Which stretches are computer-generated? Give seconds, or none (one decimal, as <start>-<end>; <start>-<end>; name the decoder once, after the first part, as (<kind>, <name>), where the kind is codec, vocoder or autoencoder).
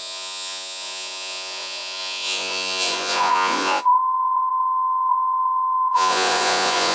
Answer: 0.0-6.9 (vocoder, Vocos)